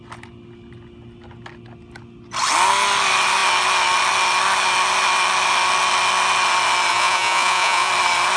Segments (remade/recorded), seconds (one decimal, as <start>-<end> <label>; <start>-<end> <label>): 0.0-6.9 recorded; 6.9-7.9 remade; 7.9-8.4 recorded